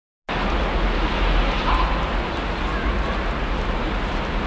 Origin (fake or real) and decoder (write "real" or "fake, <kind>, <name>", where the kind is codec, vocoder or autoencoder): real